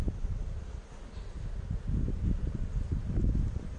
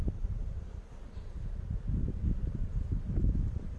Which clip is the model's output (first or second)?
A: second